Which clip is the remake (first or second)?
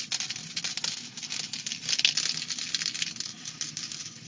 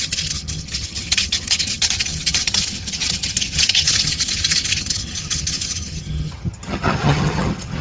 second